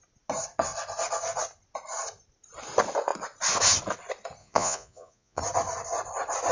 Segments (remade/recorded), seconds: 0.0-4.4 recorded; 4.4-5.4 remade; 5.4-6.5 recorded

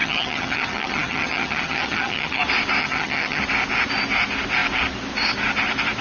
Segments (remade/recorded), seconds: 0.0-2.4 remade; 2.4-2.8 recorded; 2.8-3.4 remade; 3.4-6.0 recorded

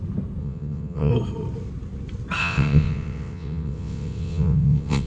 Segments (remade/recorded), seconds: 0.0-0.4 recorded; 0.4-1.1 remade; 1.1-2.4 recorded; 2.4-5.1 remade